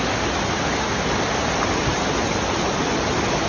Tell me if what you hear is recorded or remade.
recorded